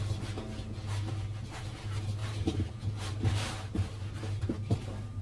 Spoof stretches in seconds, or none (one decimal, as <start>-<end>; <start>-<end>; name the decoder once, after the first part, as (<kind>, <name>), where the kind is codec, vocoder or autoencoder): 2.2-5.2 (vocoder, BigVGAN v2)